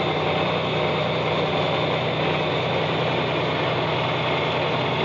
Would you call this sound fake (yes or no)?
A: no